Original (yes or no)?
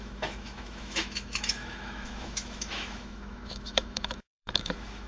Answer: no